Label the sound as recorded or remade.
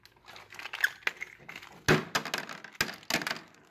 recorded